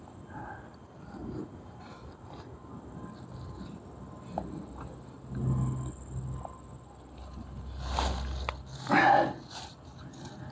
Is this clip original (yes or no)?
yes